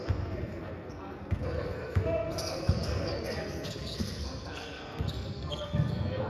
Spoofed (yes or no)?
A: yes